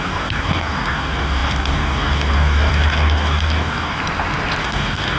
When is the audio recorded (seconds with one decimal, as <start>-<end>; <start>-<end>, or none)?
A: 4.0-4.6